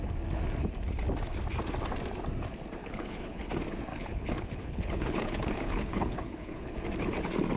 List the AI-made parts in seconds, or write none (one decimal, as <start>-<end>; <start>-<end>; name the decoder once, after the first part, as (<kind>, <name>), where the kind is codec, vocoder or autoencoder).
2.8-3.5 (codec, HILCodec); 3.9-6.8